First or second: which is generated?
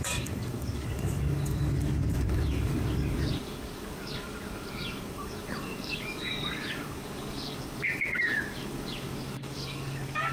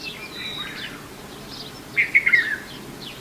first